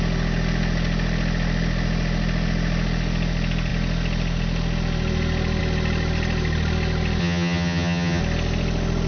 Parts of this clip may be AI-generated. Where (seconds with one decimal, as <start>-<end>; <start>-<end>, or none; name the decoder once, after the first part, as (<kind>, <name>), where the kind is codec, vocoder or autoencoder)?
7.2-8.2 (vocoder, HiFi-GAN)